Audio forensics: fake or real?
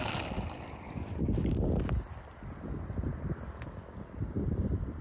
real